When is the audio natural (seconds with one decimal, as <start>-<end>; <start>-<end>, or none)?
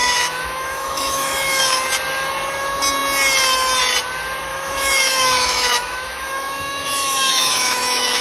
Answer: 1.9-4.5